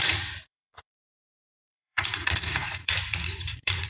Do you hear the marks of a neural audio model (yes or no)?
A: yes